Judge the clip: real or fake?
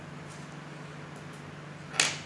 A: real